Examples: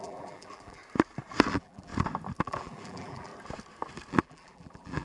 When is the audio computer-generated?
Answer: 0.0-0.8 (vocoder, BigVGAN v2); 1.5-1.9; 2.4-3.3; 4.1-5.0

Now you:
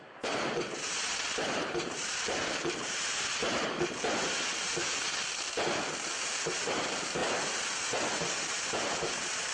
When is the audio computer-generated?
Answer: 0.0-3.4 (vocoder, BigVGAN v2); 4.5-4.9; 6.2-7.2; 8.6-9.5

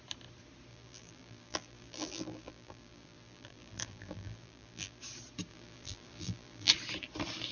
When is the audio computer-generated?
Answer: 0.7-5.0 (vocoder, BigVGAN v2); 5.5-6.7